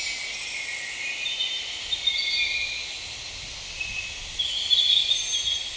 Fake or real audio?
real